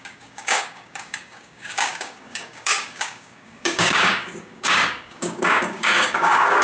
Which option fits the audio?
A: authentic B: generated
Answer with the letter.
B